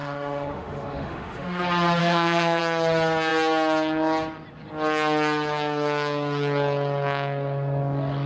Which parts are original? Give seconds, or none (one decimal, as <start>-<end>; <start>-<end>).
1.6-2.0; 2.6-8.3

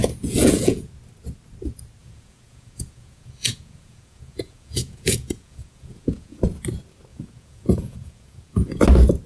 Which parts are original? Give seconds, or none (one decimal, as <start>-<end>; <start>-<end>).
0.9-2.0; 6.4-7.1; 8.8-9.3

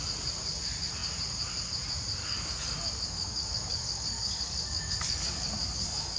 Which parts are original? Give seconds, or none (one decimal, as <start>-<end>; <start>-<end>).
0.0-2.2